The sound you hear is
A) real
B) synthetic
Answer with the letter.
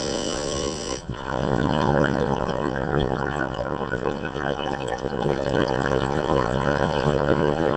B